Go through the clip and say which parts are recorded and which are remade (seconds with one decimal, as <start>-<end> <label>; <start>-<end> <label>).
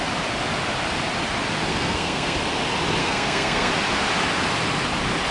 0.0-1.7 recorded; 1.7-2.4 remade; 2.4-3.0 recorded; 3.0-3.7 remade; 3.7-5.3 recorded